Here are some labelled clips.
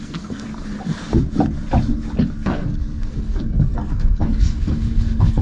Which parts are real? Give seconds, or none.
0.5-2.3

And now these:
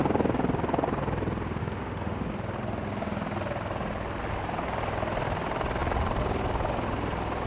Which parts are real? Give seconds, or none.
0.0-1.6; 2.3-7.5

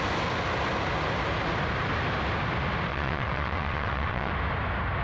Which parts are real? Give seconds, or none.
0.0-2.9; 4.3-5.0